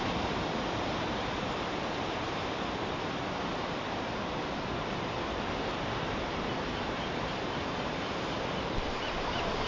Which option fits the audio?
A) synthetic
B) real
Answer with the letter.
A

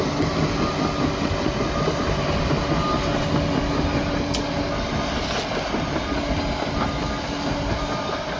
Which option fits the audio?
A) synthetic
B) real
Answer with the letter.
B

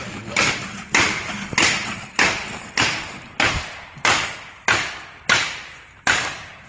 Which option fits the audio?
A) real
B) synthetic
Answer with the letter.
A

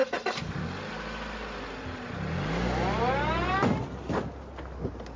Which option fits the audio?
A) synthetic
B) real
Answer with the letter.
B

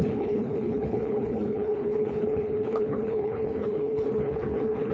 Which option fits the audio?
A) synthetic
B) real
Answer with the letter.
A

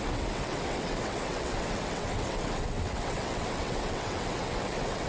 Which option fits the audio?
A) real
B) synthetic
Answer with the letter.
B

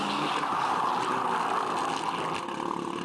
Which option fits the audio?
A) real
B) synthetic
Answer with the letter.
A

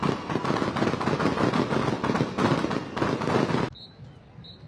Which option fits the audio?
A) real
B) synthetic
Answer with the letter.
A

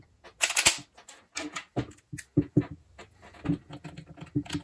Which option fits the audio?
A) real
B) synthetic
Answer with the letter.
A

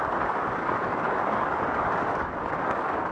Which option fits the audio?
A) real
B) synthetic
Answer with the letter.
B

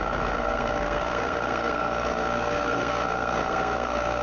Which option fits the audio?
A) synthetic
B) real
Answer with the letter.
A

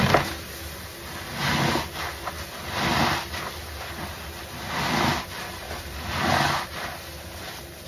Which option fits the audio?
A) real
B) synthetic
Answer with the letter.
A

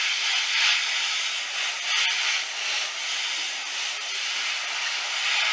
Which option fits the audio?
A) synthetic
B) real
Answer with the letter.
B